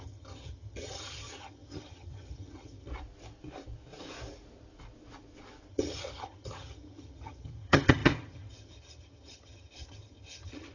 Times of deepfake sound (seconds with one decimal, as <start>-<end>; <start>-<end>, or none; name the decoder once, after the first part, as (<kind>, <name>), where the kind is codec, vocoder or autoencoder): 0.0-2.9 (vocoder, HiFi-GAN); 5.7-10.7

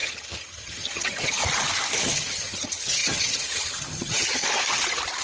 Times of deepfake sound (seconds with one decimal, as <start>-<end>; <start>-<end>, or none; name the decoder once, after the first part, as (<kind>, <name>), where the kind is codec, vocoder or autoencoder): 0.0-1.4 (vocoder, HiFi-GAN); 2.0-4.4

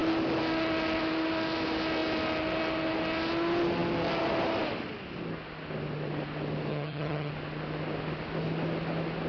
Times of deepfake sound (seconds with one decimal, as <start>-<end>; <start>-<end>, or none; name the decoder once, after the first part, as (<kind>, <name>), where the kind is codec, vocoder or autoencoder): 6.7-7.3 (vocoder, HiFi-GAN)

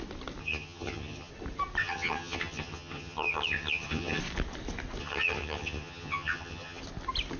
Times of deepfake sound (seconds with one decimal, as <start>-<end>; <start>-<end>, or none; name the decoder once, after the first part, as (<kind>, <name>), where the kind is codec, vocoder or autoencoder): 0.4-1.3 (vocoder, HiFi-GAN); 1.8-4.2; 5.0-6.8

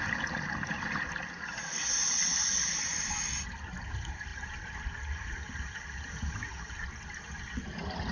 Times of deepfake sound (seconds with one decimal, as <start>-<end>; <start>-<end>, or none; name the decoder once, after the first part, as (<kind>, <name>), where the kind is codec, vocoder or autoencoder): none

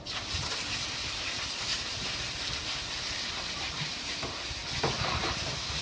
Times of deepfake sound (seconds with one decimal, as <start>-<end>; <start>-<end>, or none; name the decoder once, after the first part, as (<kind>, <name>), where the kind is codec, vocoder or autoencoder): none